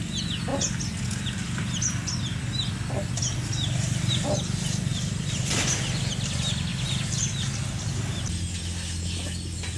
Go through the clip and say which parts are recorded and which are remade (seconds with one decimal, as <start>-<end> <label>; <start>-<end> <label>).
0.0-9.8 recorded